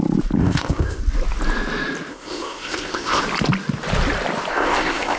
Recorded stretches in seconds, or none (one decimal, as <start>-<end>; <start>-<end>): 0.0-0.4; 1.0-2.1; 3.2-4.5